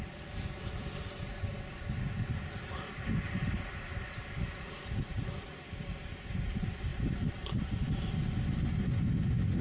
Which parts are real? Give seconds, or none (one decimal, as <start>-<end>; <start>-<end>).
0.0-9.6